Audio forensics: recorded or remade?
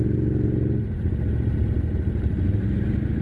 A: recorded